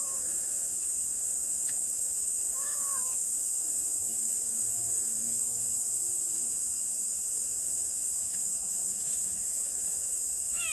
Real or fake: fake